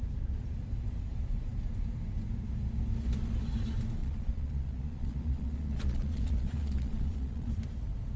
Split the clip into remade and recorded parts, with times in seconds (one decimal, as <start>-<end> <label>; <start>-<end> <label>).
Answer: 0.0-4.0 recorded; 4.0-7.6 remade; 7.6-8.2 recorded